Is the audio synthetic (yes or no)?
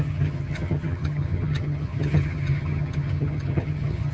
yes